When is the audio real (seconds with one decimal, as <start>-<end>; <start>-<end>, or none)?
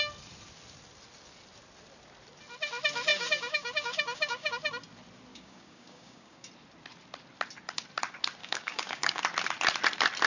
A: 0.0-3.1; 4.6-5.3; 6.5-8.4; 9.2-10.3